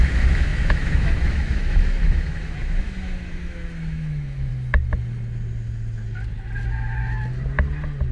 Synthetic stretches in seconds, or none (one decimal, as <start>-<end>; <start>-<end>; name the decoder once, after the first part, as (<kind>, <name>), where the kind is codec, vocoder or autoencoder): 0.0-4.5 (autoencoder, DAC-VAE)